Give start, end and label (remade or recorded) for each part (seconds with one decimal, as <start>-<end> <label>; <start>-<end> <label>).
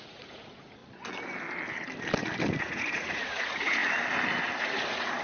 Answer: 0.0-0.8 remade; 0.8-2.6 recorded; 2.6-3.8 remade; 3.8-4.6 recorded; 4.6-5.2 remade